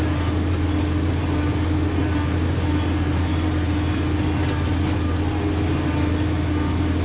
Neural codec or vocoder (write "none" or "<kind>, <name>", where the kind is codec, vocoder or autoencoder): none